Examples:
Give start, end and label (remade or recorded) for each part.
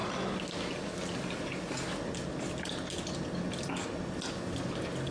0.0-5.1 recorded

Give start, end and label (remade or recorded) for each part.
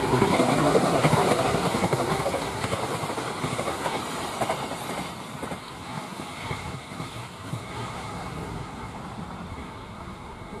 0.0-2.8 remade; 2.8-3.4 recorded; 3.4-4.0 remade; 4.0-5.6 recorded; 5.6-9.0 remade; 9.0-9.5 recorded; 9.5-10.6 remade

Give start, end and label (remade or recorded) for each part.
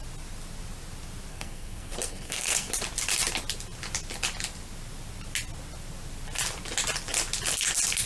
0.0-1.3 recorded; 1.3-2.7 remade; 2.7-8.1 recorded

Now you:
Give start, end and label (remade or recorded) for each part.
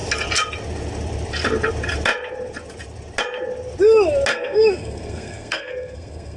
0.0-4.3 recorded; 4.3-6.4 remade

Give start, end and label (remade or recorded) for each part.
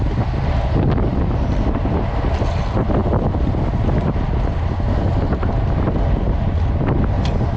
0.0-7.6 recorded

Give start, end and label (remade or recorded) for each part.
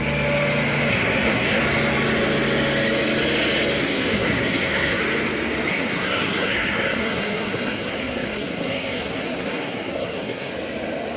0.0-0.9 recorded; 0.9-1.6 remade; 1.6-3.8 recorded; 3.8-5.0 remade; 5.0-5.7 recorded; 5.7-10.5 remade; 10.5-11.2 recorded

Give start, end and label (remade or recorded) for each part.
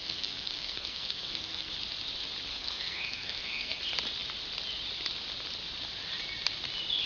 0.0-1.7 remade; 1.7-2.5 recorded; 2.5-3.8 remade; 3.8-7.1 recorded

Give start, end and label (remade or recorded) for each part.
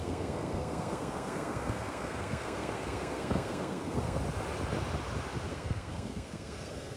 0.0-4.2 remade; 4.2-5.5 recorded; 5.5-7.0 remade